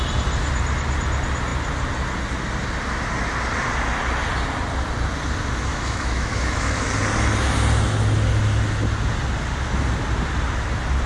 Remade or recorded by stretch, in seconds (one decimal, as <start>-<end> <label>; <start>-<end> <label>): 0.0-5.7 recorded; 5.7-6.9 remade; 6.9-11.1 recorded